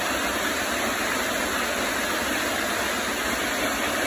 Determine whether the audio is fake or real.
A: real